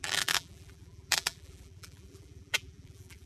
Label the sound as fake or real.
fake